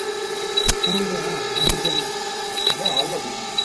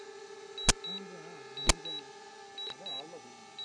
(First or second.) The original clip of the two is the second